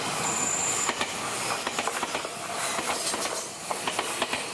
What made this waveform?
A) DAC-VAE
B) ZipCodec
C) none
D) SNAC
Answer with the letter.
C